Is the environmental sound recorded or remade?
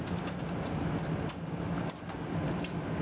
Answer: recorded